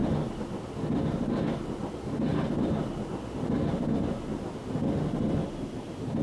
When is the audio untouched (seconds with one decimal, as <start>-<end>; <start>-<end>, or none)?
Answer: 0.0-6.2